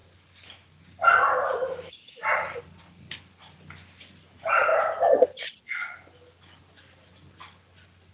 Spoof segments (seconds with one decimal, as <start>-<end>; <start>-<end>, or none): none